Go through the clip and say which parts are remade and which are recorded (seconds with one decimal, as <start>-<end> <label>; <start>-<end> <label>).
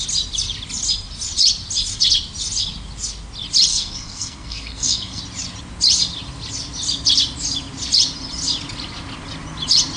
0.0-3.7 recorded; 3.7-5.2 remade; 5.2-10.0 recorded